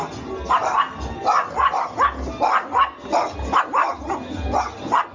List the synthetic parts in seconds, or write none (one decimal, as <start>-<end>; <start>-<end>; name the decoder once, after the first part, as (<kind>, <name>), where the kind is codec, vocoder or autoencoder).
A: none